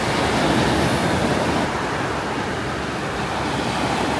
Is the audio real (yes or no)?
yes